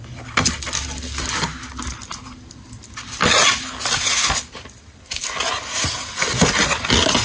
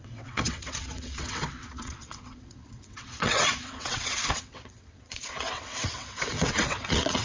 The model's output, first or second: second